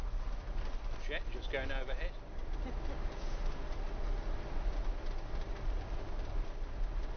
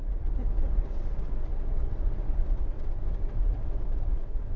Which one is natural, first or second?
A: first